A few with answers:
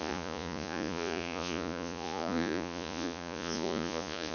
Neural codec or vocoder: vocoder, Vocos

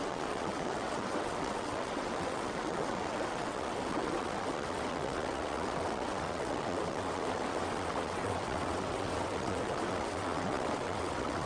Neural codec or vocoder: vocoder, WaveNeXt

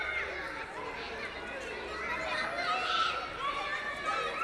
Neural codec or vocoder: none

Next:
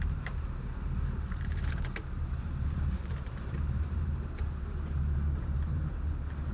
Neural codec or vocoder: vocoder, BigVGAN v2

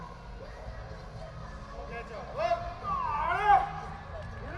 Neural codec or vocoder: none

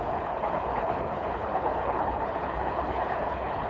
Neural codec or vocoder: codec, HILCodec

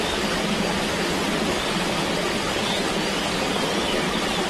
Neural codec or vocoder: none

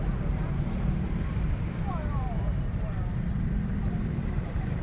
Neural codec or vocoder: vocoder, BigVGAN v2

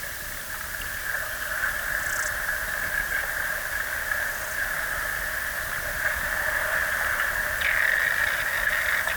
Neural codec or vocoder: none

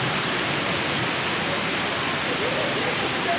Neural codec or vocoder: none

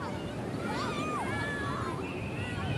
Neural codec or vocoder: none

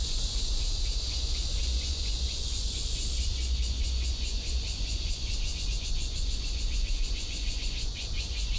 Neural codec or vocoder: vocoder, Vocos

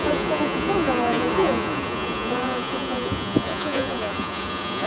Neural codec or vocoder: vocoder, Vocos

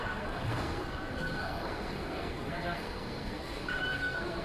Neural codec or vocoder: codec, SNAC